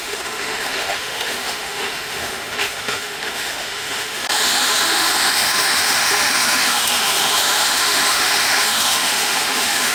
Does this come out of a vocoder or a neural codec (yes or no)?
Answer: yes